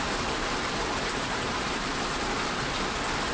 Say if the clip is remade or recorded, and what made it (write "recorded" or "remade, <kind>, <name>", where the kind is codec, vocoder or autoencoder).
remade, vocoder, BigVGAN v2